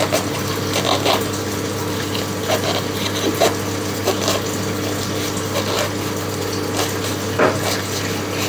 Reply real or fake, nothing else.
real